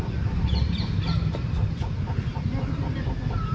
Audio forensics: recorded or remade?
recorded